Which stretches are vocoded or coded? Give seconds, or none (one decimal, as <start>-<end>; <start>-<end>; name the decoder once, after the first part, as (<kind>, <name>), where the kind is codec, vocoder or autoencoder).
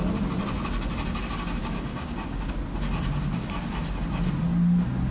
1.6-2.5 (codec, DAC)